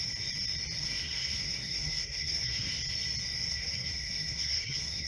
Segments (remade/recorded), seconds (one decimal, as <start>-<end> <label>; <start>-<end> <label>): 0.0-0.8 recorded; 0.8-2.7 remade; 2.7-3.5 recorded; 3.5-5.1 remade